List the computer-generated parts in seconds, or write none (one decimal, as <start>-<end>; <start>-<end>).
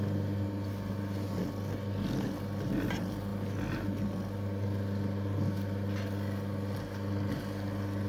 none